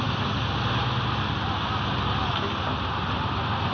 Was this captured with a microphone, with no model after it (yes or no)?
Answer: yes